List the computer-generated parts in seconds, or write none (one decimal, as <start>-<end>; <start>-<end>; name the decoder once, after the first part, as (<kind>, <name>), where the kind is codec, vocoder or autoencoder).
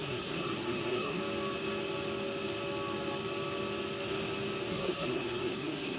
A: 0.0-1.2 (codec, SNAC); 4.7-6.0